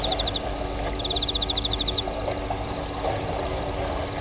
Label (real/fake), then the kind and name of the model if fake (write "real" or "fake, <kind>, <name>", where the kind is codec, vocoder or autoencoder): real